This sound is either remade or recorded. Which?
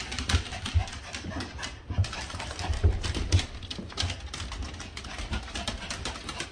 recorded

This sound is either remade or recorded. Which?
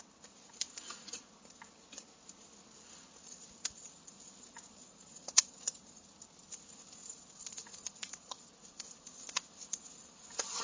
recorded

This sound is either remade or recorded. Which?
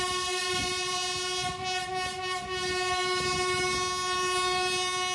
recorded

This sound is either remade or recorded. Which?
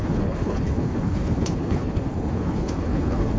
remade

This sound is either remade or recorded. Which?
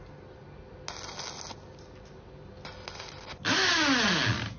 recorded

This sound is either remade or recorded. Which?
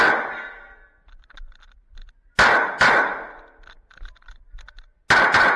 recorded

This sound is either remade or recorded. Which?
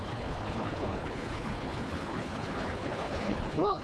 remade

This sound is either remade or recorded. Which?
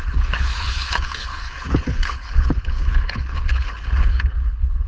remade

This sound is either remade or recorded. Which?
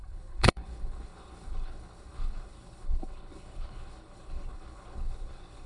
remade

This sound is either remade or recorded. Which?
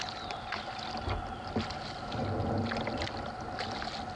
recorded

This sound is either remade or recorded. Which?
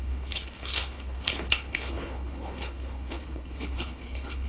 remade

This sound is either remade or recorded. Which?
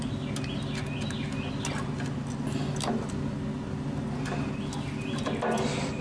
recorded